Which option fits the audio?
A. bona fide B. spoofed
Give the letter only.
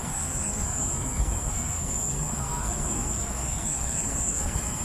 B